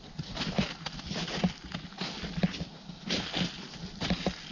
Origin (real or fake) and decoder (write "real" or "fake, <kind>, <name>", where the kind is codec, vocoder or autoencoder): real